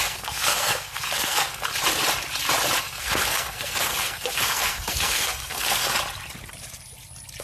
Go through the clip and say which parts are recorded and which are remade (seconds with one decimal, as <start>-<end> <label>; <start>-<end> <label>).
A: 0.0-1.7 remade; 1.7-2.8 recorded; 2.8-5.9 remade; 5.9-7.4 recorded